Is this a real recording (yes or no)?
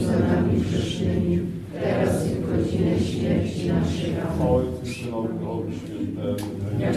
yes